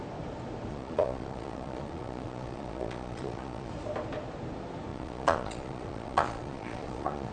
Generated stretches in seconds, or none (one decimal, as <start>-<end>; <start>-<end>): 0.7-3.7; 4.9-7.3